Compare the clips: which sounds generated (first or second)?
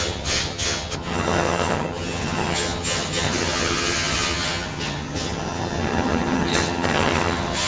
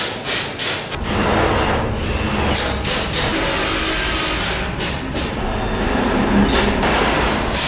first